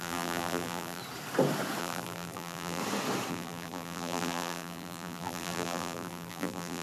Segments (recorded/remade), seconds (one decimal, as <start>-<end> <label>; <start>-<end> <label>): 0.0-1.0 remade; 1.0-1.8 recorded; 1.8-2.8 remade; 2.8-3.3 recorded; 3.3-6.8 remade

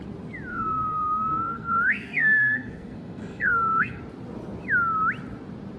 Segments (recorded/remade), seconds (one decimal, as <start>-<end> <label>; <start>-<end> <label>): 0.0-0.5 recorded; 0.5-4.0 remade; 4.0-5.8 recorded

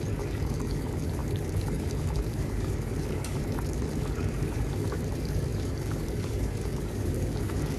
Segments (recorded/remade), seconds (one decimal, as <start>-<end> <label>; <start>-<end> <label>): 0.0-7.8 remade

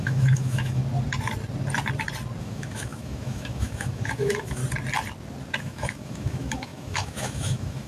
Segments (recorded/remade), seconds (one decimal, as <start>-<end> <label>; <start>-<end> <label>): 0.0-0.8 remade; 0.8-2.4 recorded; 2.4-4.6 remade; 4.6-5.6 recorded; 5.6-7.9 remade

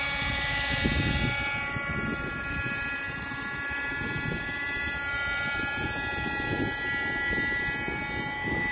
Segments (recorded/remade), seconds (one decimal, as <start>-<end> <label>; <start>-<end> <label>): 0.0-8.7 recorded

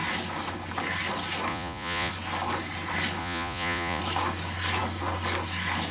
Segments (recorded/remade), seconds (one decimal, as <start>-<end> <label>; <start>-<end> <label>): 0.0-1.5 recorded; 1.5-2.1 remade; 2.1-3.2 recorded; 3.2-4.0 remade; 4.0-5.9 recorded

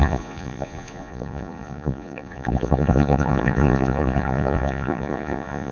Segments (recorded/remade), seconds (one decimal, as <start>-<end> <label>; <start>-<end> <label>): 0.0-5.7 remade